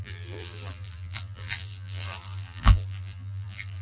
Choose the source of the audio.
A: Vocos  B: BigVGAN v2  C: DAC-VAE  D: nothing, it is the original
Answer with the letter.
B